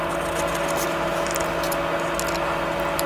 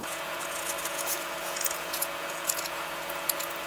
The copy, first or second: second